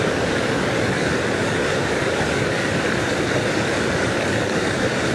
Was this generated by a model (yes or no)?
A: yes